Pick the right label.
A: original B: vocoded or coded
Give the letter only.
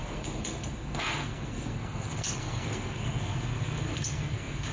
B